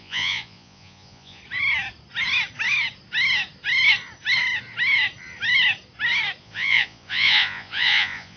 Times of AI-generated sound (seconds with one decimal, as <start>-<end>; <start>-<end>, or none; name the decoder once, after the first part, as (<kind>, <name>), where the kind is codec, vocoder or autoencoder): 0.0-1.4 (vocoder, Vocos); 6.4-8.4